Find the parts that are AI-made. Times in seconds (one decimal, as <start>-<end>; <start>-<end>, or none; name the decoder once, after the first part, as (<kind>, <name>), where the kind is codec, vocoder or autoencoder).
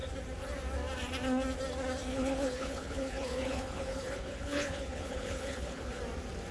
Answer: 2.1-6.0 (codec, HILCodec)